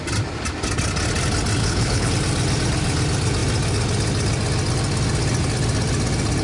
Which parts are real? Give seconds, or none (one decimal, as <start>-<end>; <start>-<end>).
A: 0.0-1.6; 2.1-6.4